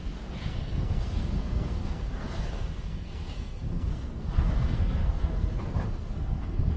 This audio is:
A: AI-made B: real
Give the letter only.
A